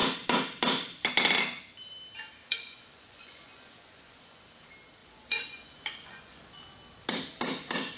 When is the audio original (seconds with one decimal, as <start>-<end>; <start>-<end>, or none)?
0.0-2.4; 4.4-5.0; 6.4-8.0